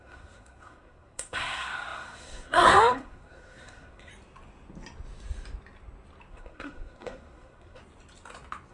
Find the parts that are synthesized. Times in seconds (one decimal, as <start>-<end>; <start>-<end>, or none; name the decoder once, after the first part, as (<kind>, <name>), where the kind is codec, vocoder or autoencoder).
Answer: 0.0-4.1 (codec, SNAC); 6.3-7.8